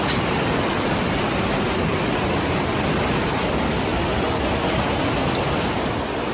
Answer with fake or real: real